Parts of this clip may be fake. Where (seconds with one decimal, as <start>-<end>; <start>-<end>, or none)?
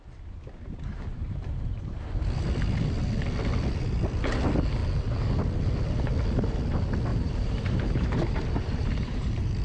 1.2-2.0; 7.1-9.6